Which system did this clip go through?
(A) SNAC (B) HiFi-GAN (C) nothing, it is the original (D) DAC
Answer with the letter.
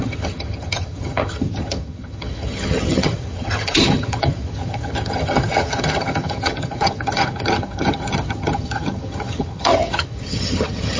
B